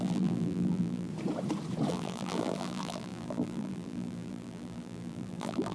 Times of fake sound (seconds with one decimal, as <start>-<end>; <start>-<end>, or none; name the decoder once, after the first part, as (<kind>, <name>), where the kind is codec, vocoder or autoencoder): 0.0-1.1 (vocoder, BigVGAN v2); 1.9-5.7